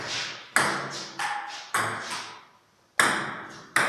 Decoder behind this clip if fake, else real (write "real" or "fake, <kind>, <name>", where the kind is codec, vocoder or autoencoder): real